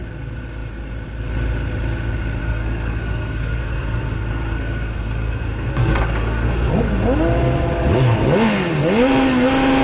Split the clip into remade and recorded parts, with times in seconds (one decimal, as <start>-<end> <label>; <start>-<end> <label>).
0.0-2.4 recorded; 2.4-6.7 remade; 6.7-9.8 recorded